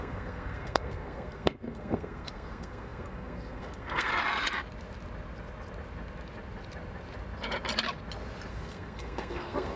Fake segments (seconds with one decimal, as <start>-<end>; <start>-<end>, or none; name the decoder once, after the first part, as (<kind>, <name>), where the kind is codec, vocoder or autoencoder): 0.0-4.1 (codec, SNAC); 8.5-9.8